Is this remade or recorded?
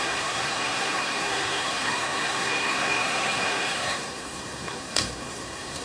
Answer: remade